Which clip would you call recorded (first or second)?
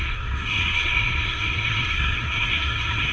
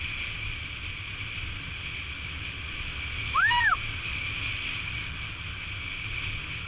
second